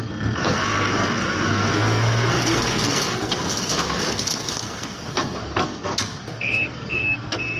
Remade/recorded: remade